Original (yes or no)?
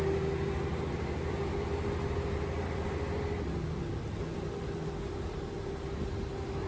yes